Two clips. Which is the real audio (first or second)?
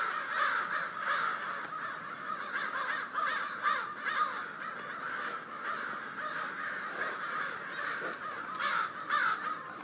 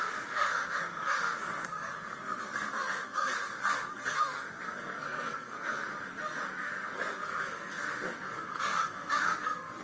first